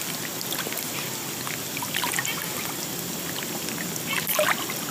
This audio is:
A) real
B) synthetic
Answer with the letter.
A